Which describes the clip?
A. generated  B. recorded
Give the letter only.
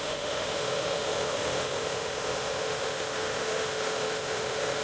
A